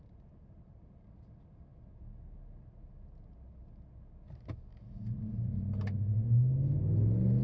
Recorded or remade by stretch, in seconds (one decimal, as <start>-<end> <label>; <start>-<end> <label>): 0.0-7.4 recorded

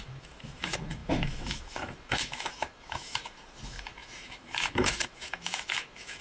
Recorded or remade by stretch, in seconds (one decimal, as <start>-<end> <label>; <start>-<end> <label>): 0.0-6.2 remade

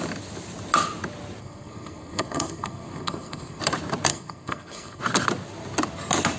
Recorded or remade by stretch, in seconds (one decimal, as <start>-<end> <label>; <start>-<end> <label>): 0.0-1.4 recorded; 1.4-3.6 remade; 3.6-4.1 recorded; 4.1-5.0 remade; 5.0-6.4 recorded

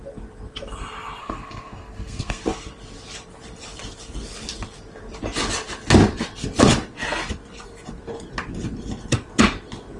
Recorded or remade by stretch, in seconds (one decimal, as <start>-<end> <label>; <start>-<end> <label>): 0.0-1.2 recorded; 1.2-2.4 remade; 2.4-10.0 recorded